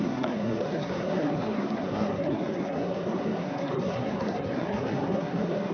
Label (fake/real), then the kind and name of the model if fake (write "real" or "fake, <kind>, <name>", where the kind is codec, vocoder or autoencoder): fake, codec, SNAC